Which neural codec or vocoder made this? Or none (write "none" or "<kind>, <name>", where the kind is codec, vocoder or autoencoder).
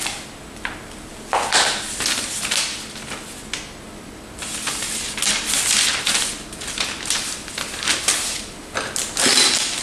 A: none